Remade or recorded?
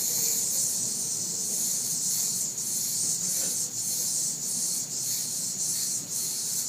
recorded